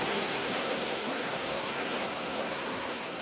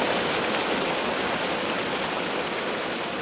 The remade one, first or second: first